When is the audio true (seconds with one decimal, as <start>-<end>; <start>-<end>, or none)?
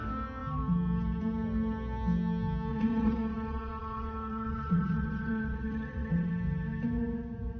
0.0-2.7; 6.3-7.6